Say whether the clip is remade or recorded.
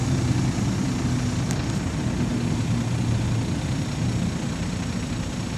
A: recorded